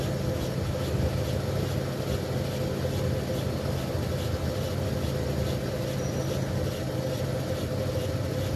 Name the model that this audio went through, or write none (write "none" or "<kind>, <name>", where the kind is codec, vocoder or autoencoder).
none